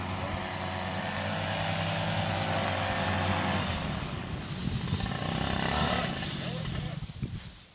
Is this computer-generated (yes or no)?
no